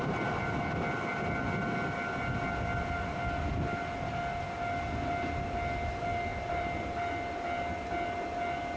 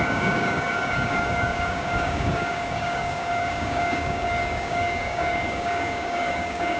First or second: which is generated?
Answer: second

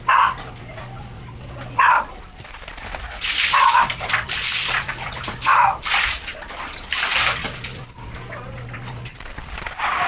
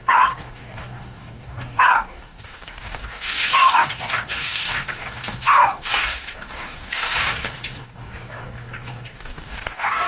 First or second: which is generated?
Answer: second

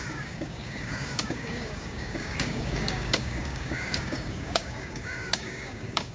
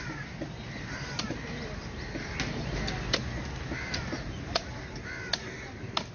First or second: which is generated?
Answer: first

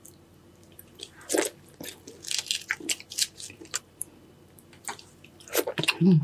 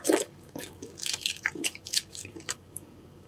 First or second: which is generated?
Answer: second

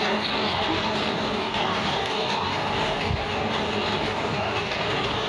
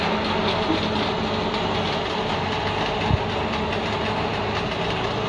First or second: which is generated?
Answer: first